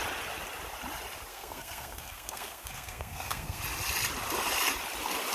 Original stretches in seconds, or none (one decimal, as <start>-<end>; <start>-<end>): 0.0-1.3; 3.6-5.3